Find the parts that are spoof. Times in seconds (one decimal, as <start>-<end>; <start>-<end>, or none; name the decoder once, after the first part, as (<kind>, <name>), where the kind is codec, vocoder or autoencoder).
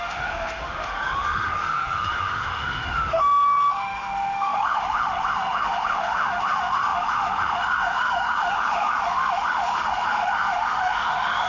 0.0-11.5 (autoencoder, DAC-VAE)